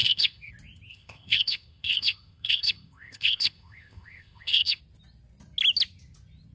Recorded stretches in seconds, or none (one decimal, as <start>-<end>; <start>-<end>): 0.5-0.9; 4.8-6.5